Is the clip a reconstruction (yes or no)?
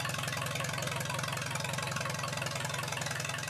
no